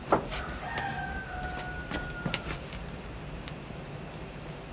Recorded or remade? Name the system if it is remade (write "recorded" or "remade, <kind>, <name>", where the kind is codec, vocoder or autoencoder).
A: recorded